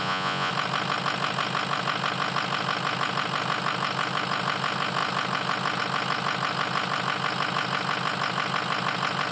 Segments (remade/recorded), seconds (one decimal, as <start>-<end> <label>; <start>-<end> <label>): 0.0-0.5 remade; 0.5-9.3 recorded

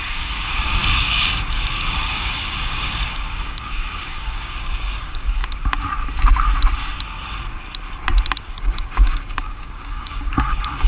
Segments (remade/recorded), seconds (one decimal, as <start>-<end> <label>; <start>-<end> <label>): 0.0-5.4 remade; 5.4-8.4 recorded; 8.4-10.9 remade